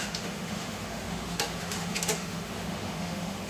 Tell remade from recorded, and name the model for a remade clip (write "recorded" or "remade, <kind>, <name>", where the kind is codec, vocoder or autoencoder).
remade, autoencoder, DAC-VAE